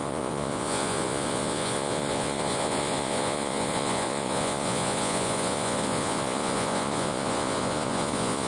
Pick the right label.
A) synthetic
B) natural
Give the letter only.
A